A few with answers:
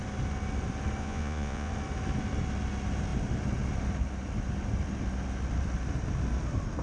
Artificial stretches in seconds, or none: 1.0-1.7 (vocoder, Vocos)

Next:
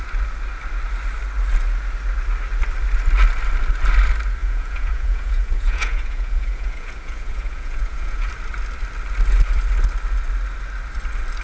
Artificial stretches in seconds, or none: 4.4-8.3 (vocoder, Vocos)

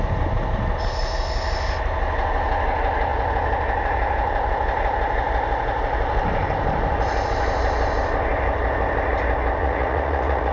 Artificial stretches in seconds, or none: 9.6-10.5 (vocoder, Vocos)

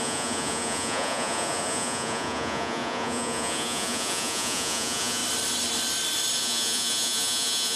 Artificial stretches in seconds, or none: 0.0-5.2 (vocoder, Vocos); 6.4-7.8

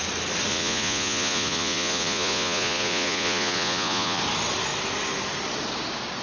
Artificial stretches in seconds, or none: 0.5-4.2 (vocoder, Vocos)

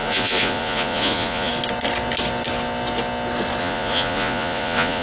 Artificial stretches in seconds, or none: 0.0-1.5 (vocoder, Vocos); 3.6-5.0

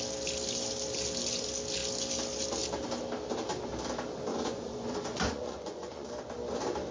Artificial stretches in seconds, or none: 4.3-6.1 (vocoder, Vocos)